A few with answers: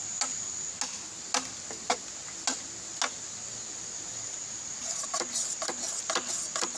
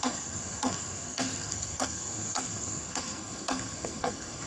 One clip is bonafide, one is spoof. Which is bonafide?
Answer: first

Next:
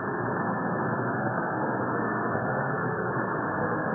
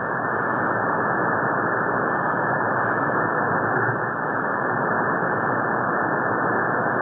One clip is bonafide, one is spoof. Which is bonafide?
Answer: second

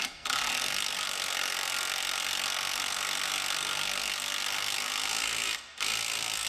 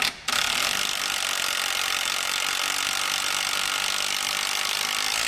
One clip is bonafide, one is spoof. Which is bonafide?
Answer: second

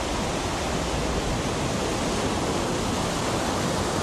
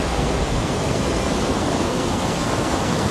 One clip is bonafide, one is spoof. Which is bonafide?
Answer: first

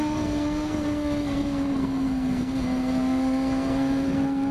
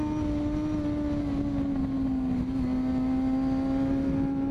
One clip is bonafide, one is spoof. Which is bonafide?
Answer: second